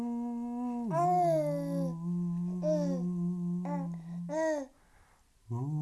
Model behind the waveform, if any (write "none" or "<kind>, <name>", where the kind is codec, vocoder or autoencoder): none